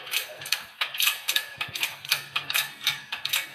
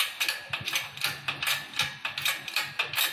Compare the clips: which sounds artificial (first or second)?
first